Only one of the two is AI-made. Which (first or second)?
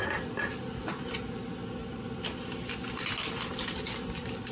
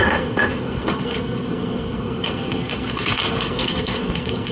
second